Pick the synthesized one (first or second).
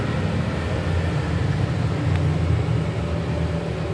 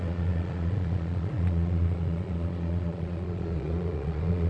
second